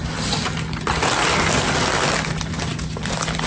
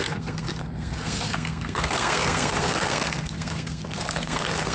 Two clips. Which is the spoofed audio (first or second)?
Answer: second